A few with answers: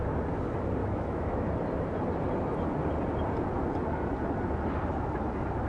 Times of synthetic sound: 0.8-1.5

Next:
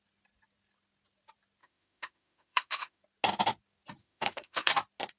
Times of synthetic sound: 1.6-3.0; 4.0-4.7

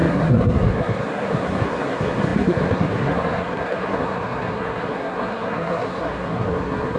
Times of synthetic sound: 0.0-7.0

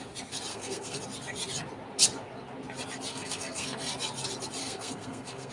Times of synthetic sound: 0.5-1.0; 3.1-3.9; 4.6-5.5

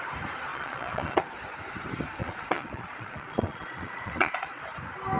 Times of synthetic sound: 0.5-1.2; 2.2-4.6

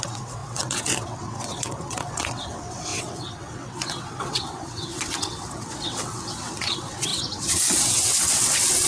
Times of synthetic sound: 0.0-8.9

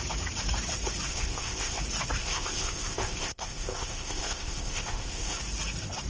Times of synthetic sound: 1.1-1.8; 2.2-5.4

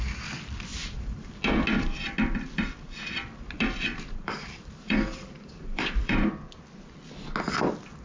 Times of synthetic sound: 0.7-1.3; 3.9-6.3